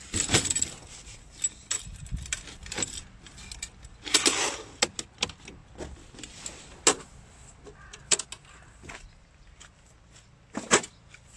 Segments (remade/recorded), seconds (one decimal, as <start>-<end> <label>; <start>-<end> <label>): 0.0-11.4 recorded